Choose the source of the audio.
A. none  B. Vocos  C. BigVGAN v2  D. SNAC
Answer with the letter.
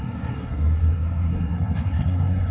D